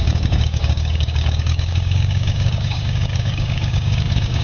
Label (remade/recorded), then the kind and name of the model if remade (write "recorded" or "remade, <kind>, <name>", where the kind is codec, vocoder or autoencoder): remade, codec, DAC